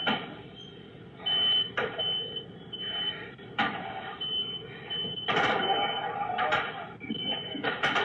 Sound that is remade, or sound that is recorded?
recorded